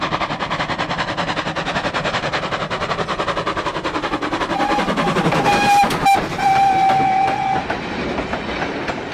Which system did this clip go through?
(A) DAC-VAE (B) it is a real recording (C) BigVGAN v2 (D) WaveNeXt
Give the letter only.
B